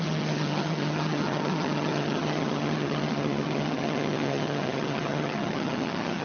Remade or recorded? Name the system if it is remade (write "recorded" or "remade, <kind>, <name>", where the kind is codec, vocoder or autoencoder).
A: remade, vocoder, HiFi-GAN